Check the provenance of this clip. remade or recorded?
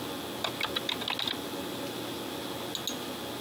recorded